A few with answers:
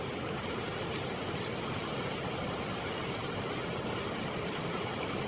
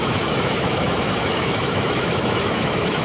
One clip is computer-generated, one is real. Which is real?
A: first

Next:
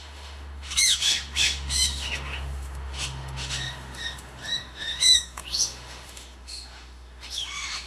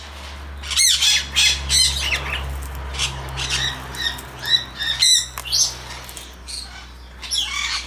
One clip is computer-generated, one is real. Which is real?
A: second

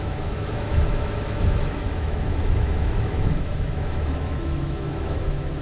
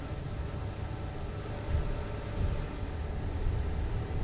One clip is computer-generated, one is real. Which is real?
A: second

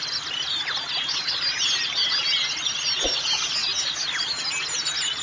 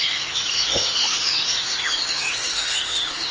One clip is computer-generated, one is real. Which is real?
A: first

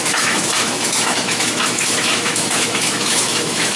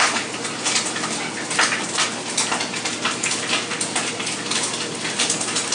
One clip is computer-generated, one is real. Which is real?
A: second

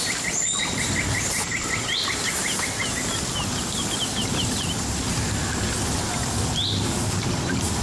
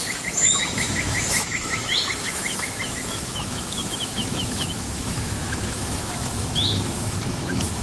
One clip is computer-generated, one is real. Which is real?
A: first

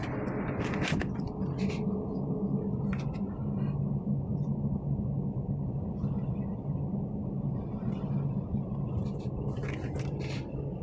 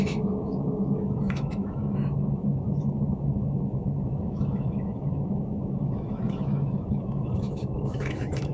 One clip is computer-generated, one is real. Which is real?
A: first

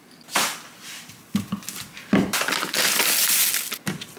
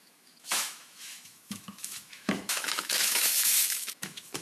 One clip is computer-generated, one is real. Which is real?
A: first